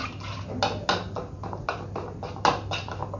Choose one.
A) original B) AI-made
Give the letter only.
A